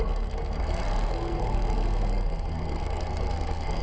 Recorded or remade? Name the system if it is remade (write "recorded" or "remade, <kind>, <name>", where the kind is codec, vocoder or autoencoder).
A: remade, codec, SNAC